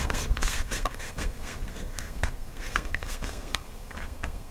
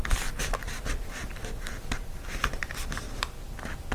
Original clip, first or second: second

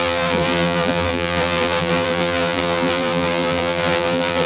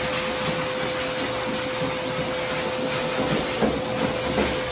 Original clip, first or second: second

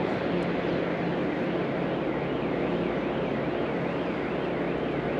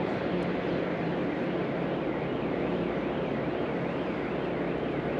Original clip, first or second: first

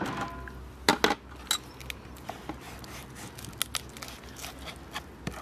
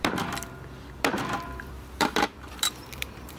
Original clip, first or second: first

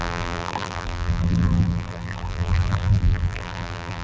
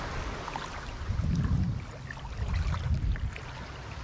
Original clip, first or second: second